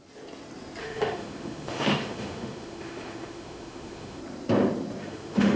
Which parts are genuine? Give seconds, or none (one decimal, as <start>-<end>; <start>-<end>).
0.0-0.8; 4.2-5.0